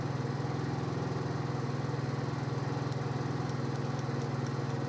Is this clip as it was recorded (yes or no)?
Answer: yes